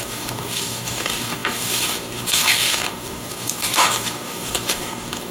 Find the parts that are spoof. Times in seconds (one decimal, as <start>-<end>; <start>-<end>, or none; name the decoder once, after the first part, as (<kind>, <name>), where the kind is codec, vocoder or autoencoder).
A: 0.0-5.3 (codec, DAC)